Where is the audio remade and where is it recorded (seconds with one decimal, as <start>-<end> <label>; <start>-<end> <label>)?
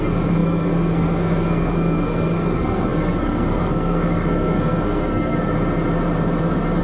0.0-5.5 remade; 5.5-6.8 recorded